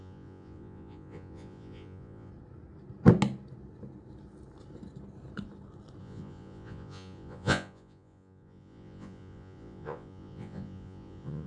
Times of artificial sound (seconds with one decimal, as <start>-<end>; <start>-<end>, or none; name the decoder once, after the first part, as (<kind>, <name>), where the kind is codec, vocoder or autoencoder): 0.0-2.3 (vocoder, Vocos); 6.0-11.5